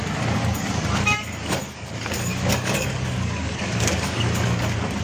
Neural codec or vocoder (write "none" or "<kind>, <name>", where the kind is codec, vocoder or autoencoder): codec, DAC